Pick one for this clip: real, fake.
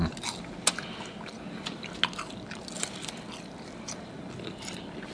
real